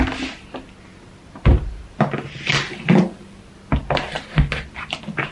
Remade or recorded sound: recorded